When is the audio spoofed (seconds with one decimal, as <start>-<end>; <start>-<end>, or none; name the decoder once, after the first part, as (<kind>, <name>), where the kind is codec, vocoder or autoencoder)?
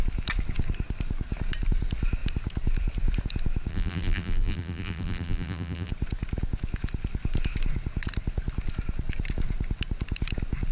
3.7-5.9 (vocoder, BigVGAN v2)